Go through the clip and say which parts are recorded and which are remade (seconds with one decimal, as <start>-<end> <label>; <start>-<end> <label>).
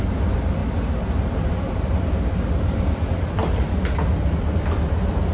0.0-0.6 remade; 0.6-1.7 recorded; 1.7-3.4 remade; 3.4-4.5 recorded; 4.5-5.3 remade